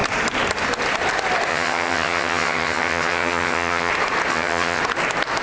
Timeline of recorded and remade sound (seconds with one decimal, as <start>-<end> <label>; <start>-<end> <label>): 0.0-1.5 recorded; 1.5-3.9 remade; 3.9-4.3 recorded; 4.3-4.8 remade; 4.8-5.4 recorded